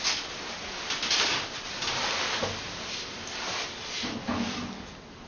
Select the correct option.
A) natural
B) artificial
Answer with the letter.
A